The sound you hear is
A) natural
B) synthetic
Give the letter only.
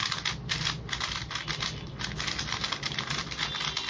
A